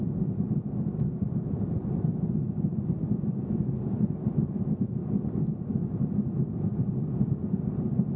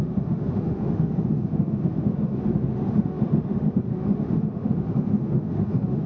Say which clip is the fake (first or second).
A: second